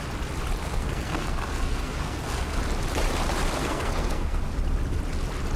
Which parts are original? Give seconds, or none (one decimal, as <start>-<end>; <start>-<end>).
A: 0.0-0.6; 2.6-3.6; 4.4-5.6